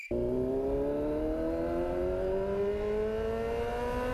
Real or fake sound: real